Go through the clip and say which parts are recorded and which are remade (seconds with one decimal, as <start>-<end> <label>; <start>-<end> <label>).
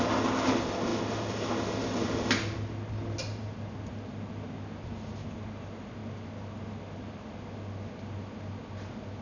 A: 0.0-9.2 recorded